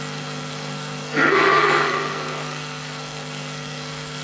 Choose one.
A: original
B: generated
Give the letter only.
B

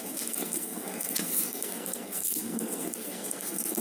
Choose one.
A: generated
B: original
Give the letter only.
A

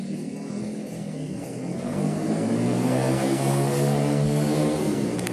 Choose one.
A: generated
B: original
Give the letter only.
A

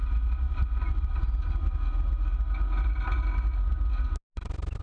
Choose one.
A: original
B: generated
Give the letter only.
A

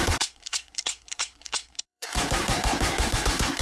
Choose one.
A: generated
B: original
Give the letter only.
A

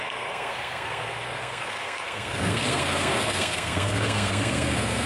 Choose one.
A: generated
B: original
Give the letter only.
A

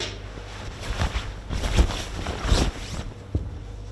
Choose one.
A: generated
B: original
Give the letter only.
B